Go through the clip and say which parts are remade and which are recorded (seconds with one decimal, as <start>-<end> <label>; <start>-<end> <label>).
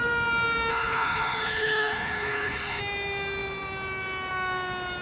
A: 0.0-0.7 recorded; 0.7-2.8 remade; 2.8-5.0 recorded